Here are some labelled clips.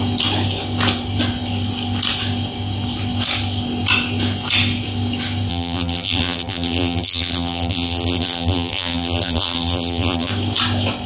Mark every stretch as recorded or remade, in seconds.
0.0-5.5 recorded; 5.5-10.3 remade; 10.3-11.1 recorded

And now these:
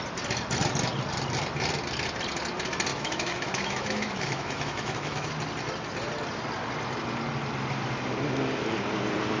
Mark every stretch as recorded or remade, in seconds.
0.0-2.9 recorded; 2.9-5.3 remade; 5.3-9.4 recorded

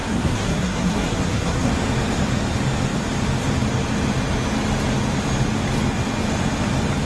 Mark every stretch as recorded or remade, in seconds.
0.0-1.7 remade; 1.7-7.1 recorded

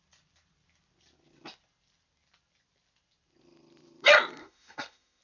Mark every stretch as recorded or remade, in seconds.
0.0-4.4 recorded; 4.4-5.2 remade